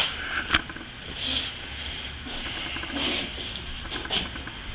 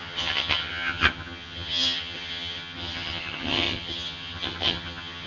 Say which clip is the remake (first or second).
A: second